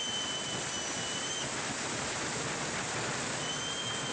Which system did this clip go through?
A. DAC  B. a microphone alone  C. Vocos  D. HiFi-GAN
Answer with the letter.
B